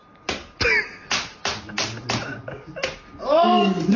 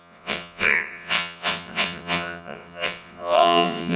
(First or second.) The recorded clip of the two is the first